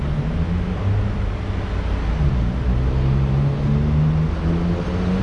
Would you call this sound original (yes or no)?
yes